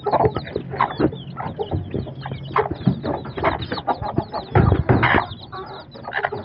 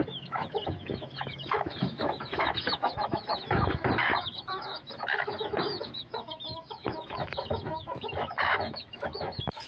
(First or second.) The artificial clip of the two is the second